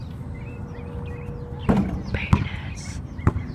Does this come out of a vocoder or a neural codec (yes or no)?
no